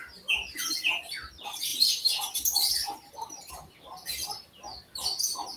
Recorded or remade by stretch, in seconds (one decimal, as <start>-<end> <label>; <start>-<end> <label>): 0.0-5.6 recorded